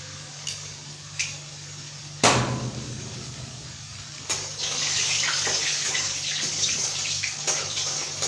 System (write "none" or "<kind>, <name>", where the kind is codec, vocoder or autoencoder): codec, DAC